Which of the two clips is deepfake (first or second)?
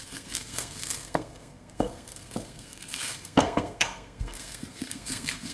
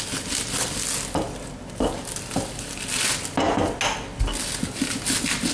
first